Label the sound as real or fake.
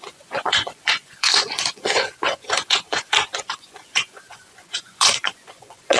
fake